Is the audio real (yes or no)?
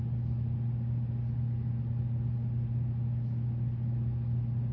yes